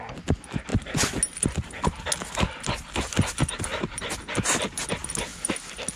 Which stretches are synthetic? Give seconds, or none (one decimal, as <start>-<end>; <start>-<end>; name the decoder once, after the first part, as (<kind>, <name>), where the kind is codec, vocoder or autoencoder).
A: none